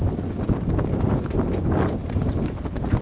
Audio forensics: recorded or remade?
recorded